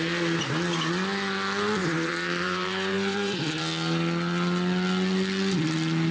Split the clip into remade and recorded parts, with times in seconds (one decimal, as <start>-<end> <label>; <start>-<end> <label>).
0.0-1.8 recorded; 1.8-3.6 remade; 3.6-6.1 recorded